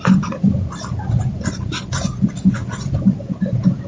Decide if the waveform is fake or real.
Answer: real